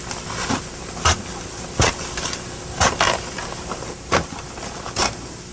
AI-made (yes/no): no